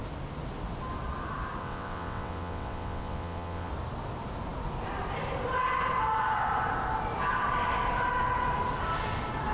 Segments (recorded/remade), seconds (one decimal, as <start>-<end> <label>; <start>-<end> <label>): 0.0-1.6 recorded; 1.6-3.7 remade; 3.7-9.5 recorded

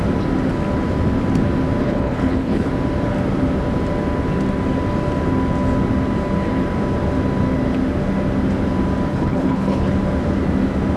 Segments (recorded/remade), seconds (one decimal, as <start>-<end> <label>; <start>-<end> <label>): 0.0-1.8 recorded; 1.8-2.7 remade; 2.7-9.1 recorded; 9.1-9.9 remade; 9.9-11.0 recorded

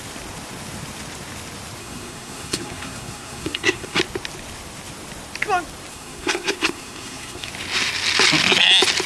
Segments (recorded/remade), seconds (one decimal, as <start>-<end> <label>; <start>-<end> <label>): 0.0-1.8 recorded; 1.8-4.0 remade; 4.0-5.9 recorded; 5.9-7.5 remade; 7.5-9.1 recorded

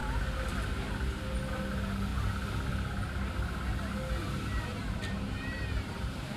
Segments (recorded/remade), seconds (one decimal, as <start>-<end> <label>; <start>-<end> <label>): 0.0-4.7 recorded; 4.7-6.4 remade